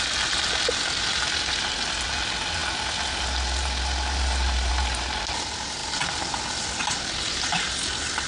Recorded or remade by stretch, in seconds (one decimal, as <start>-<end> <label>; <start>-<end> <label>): 0.0-8.3 recorded